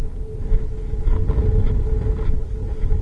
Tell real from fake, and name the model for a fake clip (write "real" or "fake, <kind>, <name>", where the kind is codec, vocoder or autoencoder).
real